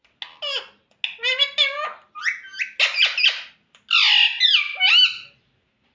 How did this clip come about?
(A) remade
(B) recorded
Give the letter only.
B